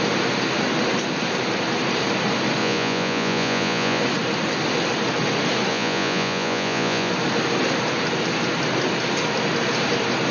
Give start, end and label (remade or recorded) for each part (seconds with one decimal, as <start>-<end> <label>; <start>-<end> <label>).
0.0-2.6 recorded; 2.6-4.0 remade; 4.0-5.7 recorded; 5.7-7.1 remade; 7.1-10.3 recorded